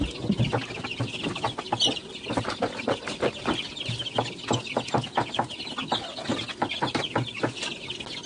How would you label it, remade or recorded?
recorded